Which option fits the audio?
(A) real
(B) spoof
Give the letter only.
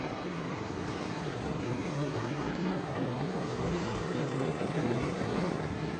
B